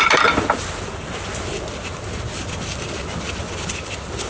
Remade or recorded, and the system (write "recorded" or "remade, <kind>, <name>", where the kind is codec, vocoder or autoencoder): recorded